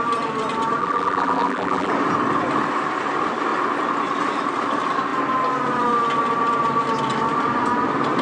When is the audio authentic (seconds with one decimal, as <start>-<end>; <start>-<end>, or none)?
0.0-0.8; 1.9-8.2

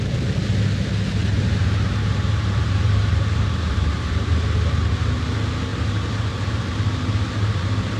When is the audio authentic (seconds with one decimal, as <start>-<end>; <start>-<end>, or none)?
0.0-1.2; 4.4-5.7; 6.6-8.0

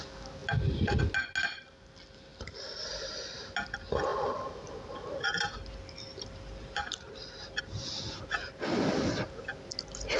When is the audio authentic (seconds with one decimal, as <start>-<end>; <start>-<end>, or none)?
0.0-2.3; 2.9-4.1; 7.6-10.2